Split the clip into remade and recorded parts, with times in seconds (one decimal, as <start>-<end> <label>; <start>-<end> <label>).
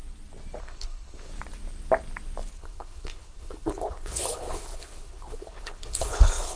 0.0-0.6 recorded; 0.6-1.3 remade; 1.3-2.5 recorded; 2.5-6.6 remade